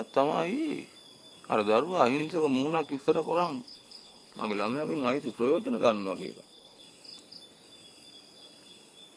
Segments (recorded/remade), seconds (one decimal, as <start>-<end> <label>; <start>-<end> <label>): 0.0-2.2 recorded; 2.2-6.8 remade; 6.8-9.2 recorded